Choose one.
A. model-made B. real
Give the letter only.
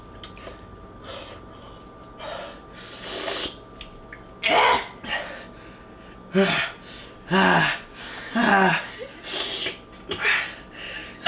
B